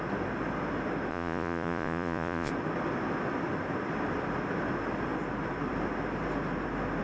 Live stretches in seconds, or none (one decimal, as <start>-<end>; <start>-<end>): 0.0-1.1; 2.5-7.0